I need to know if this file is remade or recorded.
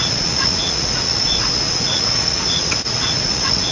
remade